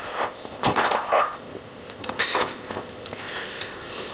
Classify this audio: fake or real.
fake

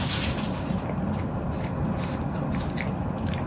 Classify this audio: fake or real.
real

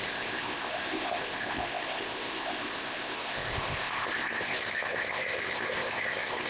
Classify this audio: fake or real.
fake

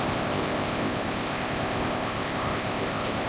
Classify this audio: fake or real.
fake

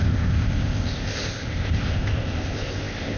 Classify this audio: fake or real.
fake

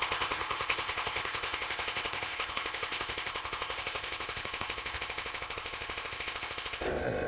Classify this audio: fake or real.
fake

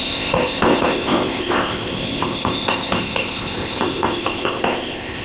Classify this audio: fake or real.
fake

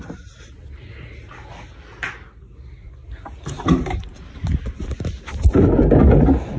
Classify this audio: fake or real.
real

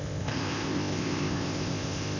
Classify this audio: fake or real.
fake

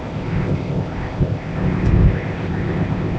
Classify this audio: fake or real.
fake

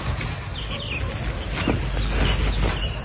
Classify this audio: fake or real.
real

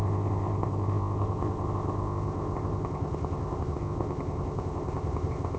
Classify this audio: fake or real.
fake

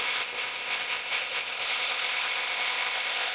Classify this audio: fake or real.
fake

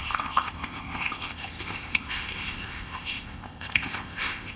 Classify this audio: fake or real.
fake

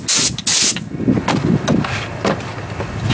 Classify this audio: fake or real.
real